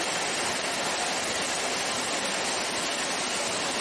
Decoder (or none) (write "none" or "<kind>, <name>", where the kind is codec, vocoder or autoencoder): none